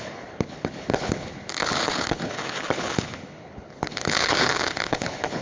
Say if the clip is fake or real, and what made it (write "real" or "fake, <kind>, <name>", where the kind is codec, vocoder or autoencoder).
fake, codec, HILCodec